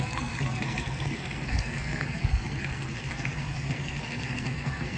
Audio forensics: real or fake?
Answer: fake